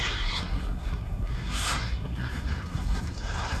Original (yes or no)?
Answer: no